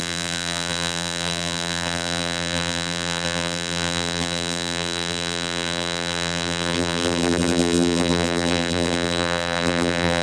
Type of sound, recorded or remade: remade